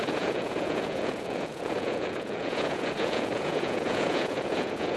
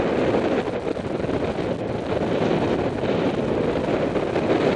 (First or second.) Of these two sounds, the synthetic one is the first